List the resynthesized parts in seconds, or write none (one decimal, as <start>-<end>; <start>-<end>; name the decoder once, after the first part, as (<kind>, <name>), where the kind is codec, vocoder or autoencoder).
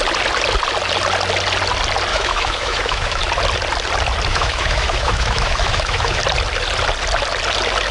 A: 2.1-3.2 (autoencoder, DAC-VAE); 4.3-6.2